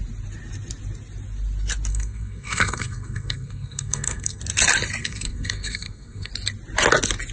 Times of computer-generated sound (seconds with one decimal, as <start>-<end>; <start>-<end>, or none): 1.9-4.4; 5.0-6.3